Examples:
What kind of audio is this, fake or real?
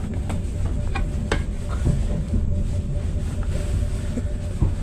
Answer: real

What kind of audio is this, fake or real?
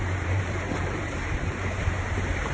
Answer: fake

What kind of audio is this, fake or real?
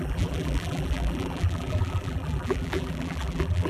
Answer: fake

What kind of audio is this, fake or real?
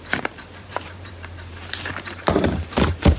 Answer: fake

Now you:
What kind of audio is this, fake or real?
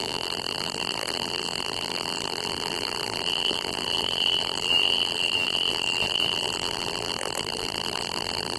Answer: fake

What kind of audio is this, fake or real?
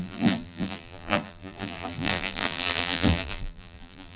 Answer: fake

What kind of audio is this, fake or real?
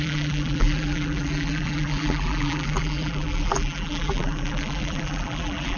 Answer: fake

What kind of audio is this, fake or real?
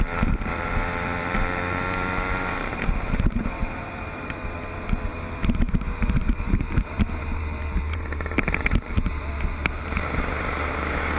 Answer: fake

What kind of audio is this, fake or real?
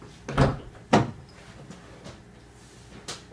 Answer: real